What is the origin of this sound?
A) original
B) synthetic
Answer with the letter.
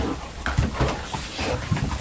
B